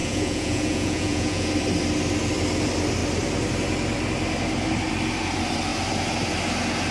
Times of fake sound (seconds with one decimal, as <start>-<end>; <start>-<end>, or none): 0.0-1.5